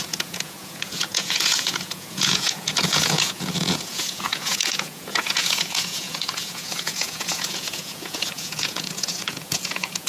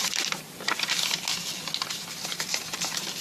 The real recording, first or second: second